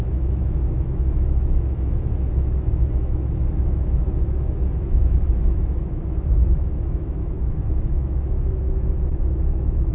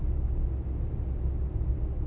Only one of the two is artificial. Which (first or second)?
first